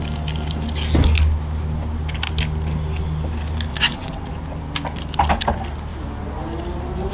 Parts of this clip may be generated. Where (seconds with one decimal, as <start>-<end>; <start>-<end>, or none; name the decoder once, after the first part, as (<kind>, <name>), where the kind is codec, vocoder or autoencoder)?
3.7-4.3 (vocoder, WaveNeXt)